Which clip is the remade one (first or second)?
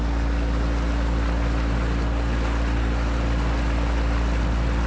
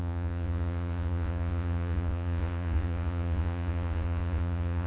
second